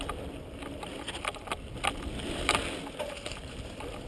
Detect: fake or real real